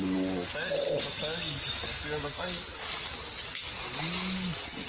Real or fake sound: real